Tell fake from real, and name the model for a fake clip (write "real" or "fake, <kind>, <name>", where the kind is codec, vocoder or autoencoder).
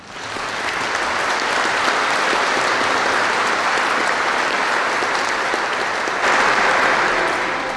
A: real